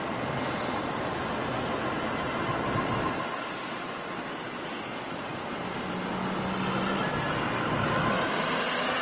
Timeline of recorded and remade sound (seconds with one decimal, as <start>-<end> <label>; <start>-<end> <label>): 0.0-9.0 recorded